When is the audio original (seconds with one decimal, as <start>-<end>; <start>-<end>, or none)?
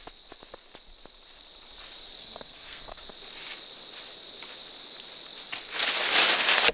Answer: 0.0-2.2; 3.0-6.7